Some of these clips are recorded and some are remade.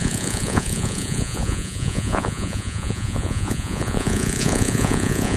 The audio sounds remade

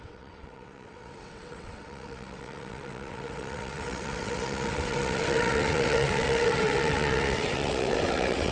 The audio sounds remade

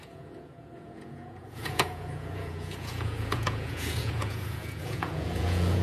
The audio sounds remade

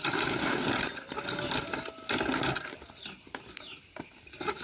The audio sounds recorded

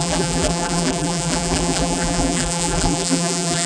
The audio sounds remade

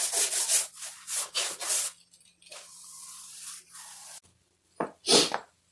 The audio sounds recorded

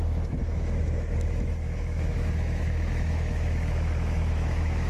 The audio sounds remade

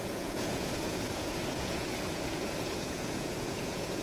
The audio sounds remade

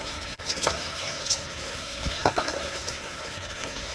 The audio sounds remade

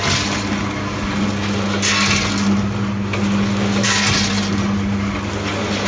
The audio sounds recorded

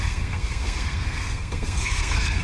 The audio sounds remade